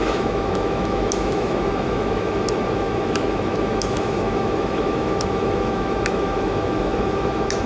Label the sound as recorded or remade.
remade